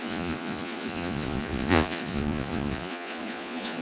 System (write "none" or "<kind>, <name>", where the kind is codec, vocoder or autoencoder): vocoder, Vocos